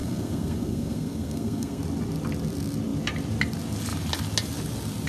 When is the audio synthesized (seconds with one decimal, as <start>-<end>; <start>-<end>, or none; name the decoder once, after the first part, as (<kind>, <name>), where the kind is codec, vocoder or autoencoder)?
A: 0.0-1.8 (codec, SNAC)